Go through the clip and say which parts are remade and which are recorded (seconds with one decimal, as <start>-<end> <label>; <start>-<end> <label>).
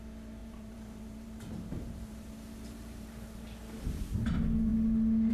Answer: 0.0-0.4 recorded; 0.4-3.6 remade; 3.6-5.3 recorded